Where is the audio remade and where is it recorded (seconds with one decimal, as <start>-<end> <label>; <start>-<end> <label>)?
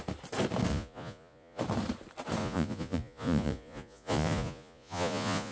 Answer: 0.0-0.7 recorded; 0.7-1.6 remade; 1.6-2.4 recorded; 2.4-5.5 remade